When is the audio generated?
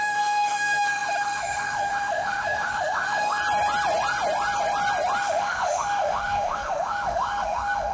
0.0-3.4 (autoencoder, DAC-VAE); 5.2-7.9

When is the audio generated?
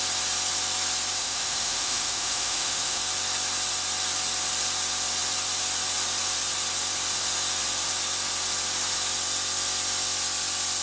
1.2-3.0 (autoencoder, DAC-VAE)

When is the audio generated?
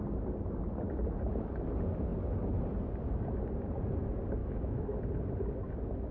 4.4-5.0 (autoencoder, DAC-VAE)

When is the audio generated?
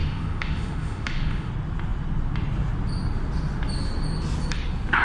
0.0-1.5 (autoencoder, DAC-VAE)